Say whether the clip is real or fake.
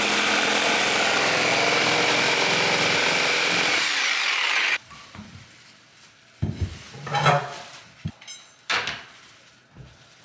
fake